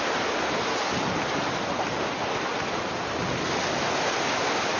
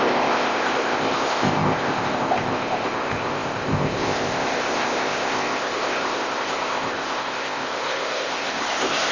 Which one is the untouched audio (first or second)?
first